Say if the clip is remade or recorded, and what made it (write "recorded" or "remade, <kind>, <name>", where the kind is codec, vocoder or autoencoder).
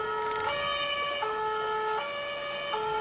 recorded